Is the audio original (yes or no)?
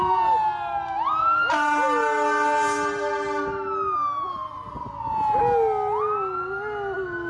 yes